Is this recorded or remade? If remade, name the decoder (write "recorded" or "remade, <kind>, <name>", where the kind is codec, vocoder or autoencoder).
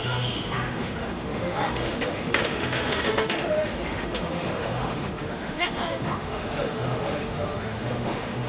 remade, autoencoder, DAC-VAE